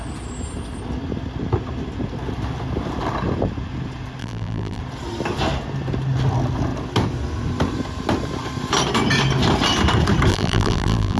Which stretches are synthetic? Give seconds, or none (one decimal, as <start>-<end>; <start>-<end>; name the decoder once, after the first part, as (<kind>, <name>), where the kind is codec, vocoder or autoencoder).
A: 4.2-4.8 (vocoder, BigVGAN v2); 10.3-11.2